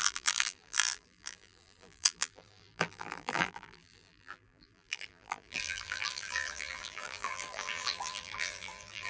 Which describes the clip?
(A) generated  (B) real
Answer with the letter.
A